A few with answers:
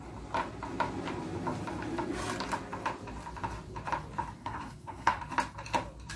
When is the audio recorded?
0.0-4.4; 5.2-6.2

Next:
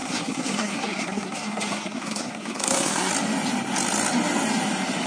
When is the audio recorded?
3.1-5.1